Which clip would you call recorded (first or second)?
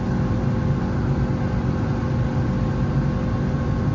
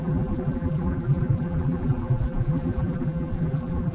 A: first